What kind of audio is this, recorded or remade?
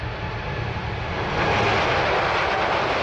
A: recorded